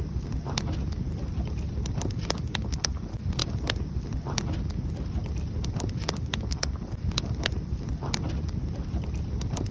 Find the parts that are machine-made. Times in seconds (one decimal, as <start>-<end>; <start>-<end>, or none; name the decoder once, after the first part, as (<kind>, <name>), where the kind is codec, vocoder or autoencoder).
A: 5.2-9.2 (vocoder, BigVGAN v2)